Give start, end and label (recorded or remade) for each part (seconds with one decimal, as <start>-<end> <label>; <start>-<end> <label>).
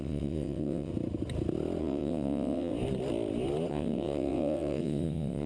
0.0-0.9 remade; 0.9-1.8 recorded; 1.8-2.7 remade; 2.7-3.7 recorded; 3.7-5.5 remade